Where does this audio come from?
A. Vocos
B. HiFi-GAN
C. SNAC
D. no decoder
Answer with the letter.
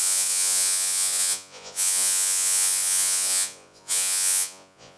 A